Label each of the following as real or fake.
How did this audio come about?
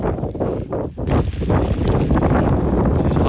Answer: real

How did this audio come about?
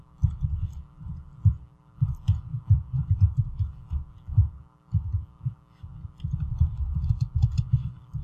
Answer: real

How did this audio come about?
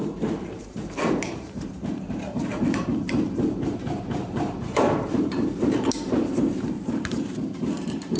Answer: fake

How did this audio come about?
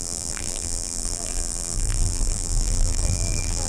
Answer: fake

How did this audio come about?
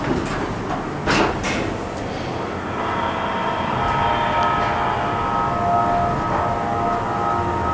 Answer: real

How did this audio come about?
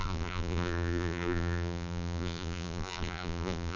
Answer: fake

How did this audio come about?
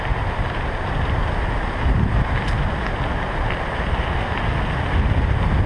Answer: real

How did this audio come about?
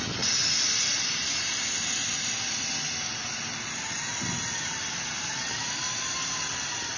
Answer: real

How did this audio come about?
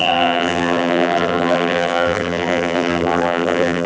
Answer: fake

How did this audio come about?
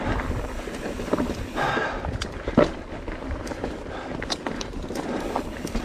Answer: fake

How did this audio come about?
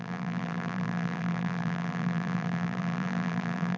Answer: fake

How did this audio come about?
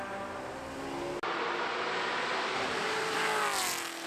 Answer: real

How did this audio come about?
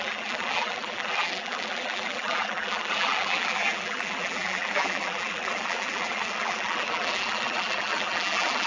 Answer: fake